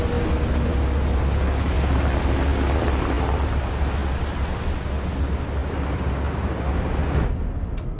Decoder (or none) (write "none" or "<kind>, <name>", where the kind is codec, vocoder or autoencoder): none